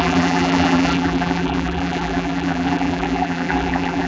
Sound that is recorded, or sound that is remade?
remade